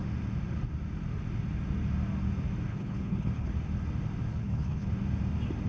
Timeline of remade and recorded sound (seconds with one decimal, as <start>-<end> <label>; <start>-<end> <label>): 0.0-2.7 recorded; 2.7-3.5 remade; 3.5-4.3 recorded; 4.3-4.9 remade; 4.9-5.7 recorded